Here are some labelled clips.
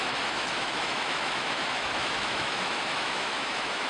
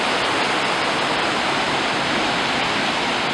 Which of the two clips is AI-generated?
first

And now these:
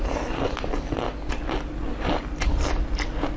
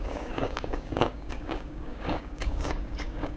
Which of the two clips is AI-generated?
second